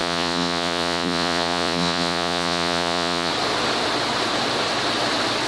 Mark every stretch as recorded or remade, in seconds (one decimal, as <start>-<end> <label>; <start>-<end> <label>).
0.0-3.3 remade; 3.3-5.5 recorded